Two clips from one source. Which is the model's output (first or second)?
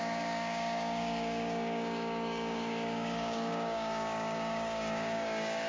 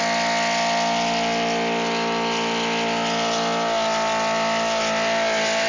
first